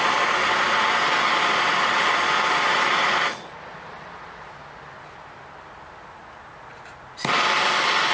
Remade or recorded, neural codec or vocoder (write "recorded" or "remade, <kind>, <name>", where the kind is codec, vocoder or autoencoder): recorded